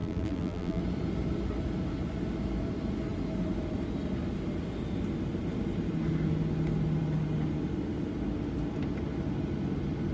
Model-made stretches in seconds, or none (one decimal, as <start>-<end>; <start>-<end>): 0.0-0.8